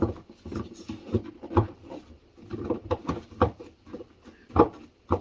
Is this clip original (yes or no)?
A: yes